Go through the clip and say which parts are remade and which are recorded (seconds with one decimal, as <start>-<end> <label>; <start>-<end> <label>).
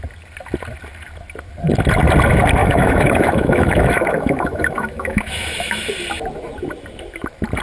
0.0-2.6 recorded; 2.6-5.9 remade; 5.9-7.6 recorded